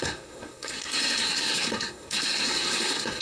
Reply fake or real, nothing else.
fake